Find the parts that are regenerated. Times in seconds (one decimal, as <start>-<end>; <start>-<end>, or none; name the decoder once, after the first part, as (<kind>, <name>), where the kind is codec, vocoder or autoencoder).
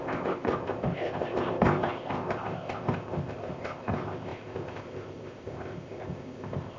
0.0-6.8 (codec, ZipCodec)